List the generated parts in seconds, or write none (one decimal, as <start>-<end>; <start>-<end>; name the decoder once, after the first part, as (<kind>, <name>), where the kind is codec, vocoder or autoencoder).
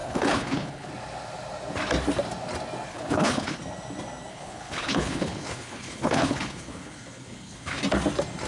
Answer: 0.0-0.9 (codec, HILCodec); 2.9-3.6; 4.3-7.8